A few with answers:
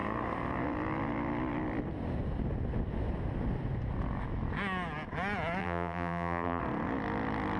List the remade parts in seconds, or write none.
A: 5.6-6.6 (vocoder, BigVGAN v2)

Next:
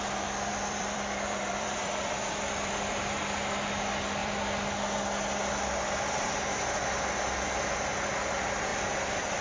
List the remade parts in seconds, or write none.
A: 0.5-3.0 (vocoder, BigVGAN v2); 4.2-5.0; 8.7-9.4

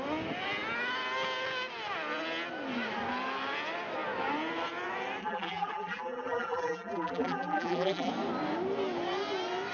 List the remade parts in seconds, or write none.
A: 5.2-8.1 (vocoder, BigVGAN v2)